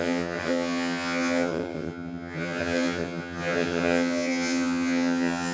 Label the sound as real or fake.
fake